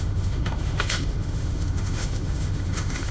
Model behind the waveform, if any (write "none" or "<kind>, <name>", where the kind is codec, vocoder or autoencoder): autoencoder, DAC-VAE